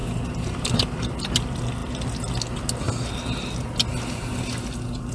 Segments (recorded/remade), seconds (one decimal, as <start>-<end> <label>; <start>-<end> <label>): 0.0-5.1 recorded

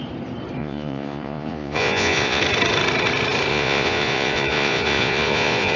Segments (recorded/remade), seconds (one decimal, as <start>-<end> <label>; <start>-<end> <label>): 0.0-0.6 recorded; 0.6-2.4 remade; 2.4-3.5 recorded; 3.5-5.8 remade

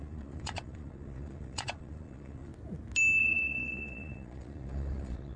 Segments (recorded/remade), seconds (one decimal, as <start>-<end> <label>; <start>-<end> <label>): 0.0-2.5 remade; 2.5-3.2 recorded; 3.2-5.4 remade